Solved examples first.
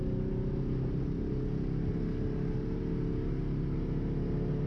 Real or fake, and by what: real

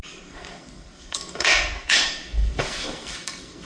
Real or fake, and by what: fake, codec, SNAC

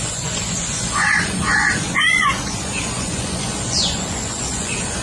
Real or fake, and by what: fake, vocoder, Vocos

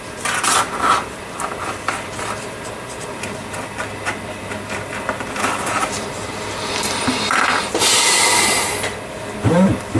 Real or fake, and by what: fake, vocoder, BigVGAN v2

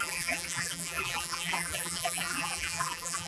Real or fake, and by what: fake, vocoder, BigVGAN v2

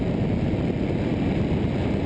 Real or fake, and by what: real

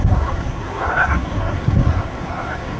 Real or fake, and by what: fake, codec, SNAC